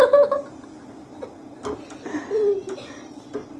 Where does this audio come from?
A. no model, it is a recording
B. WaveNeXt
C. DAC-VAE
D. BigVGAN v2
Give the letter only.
A